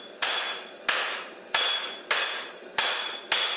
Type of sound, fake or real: fake